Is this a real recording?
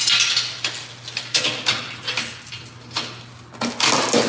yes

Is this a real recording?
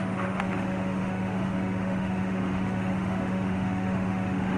no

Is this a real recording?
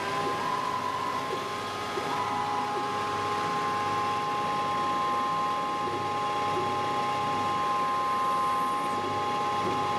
yes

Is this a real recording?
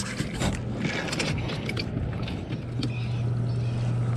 yes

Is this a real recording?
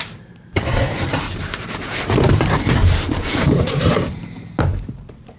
no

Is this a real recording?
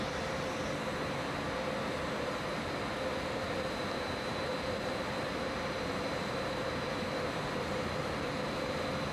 no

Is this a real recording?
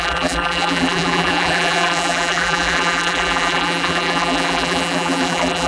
no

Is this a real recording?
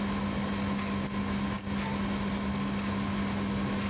yes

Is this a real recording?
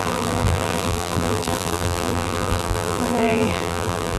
no